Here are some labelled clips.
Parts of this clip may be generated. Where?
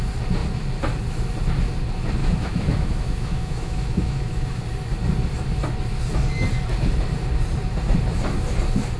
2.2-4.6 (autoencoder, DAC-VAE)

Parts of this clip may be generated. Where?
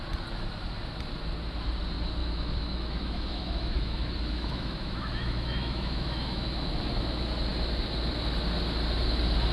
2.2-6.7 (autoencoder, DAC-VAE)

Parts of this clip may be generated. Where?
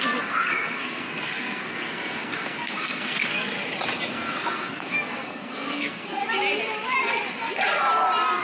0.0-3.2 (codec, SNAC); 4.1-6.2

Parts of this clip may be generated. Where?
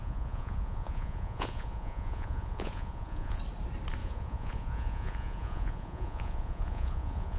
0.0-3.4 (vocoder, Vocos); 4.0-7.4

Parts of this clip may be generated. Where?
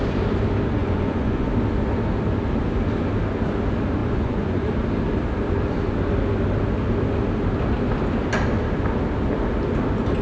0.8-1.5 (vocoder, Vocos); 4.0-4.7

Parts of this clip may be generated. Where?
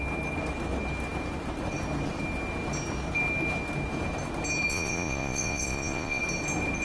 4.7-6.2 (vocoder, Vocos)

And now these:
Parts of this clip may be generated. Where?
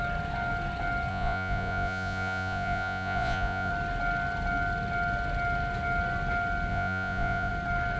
1.1-3.7 (vocoder, Vocos); 6.7-7.5